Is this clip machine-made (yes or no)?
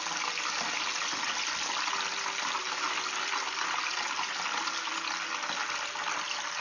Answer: no